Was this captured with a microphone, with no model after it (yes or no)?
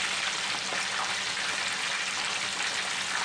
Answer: yes